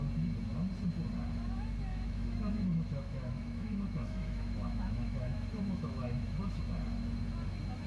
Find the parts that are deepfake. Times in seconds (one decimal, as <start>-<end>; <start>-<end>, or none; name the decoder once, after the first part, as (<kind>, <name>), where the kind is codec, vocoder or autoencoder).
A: 1.9-6.6 (autoencoder, DAC-VAE)

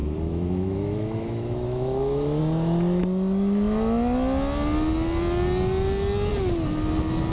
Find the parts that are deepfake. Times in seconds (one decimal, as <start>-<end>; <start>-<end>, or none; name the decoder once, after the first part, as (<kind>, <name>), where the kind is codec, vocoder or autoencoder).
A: 0.0-2.4 (autoencoder, DAC-VAE)